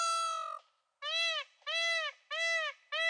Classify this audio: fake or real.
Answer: real